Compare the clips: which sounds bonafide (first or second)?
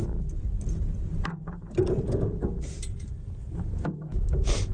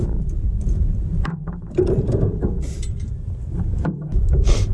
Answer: first